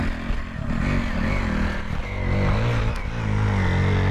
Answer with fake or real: real